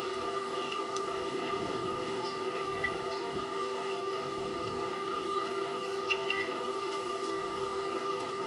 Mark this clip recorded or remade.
remade